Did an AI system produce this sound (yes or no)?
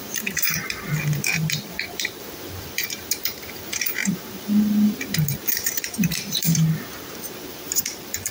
yes